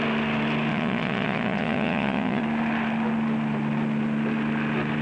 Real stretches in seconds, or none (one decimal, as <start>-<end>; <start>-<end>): 0.0-0.7; 2.4-5.0